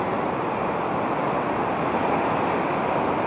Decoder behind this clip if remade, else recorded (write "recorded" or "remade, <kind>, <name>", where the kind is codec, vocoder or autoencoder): recorded